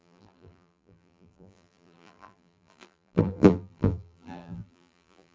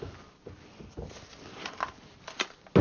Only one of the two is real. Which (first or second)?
second